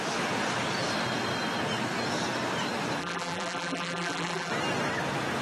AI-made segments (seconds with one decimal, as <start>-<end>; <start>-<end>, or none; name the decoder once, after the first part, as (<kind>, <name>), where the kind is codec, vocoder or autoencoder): 3.0-4.5 (vocoder, BigVGAN v2)